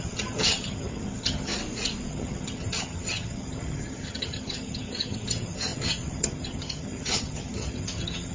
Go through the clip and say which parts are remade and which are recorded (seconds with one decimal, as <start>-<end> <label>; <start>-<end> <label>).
0.0-1.5 remade; 1.5-2.1 recorded; 2.1-8.3 remade